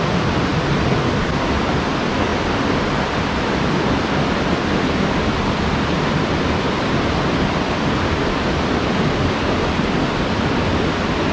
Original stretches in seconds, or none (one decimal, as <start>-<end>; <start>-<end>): 2.3-7.2